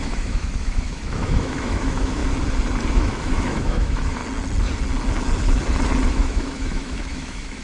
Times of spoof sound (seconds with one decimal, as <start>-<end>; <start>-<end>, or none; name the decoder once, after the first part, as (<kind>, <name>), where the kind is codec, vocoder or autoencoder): 0.0-2.2 (autoencoder, DAC-VAE); 2.9-4.2; 6.1-7.6